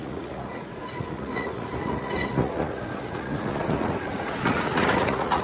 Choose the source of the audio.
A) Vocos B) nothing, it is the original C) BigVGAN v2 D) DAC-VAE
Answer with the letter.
A